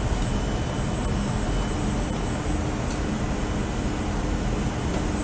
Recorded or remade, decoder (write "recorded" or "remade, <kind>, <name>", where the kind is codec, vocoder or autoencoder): recorded